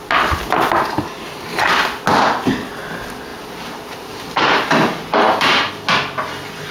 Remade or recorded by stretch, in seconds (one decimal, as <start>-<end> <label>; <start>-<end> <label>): 0.0-3.3 recorded; 3.3-5.7 remade; 5.7-6.7 recorded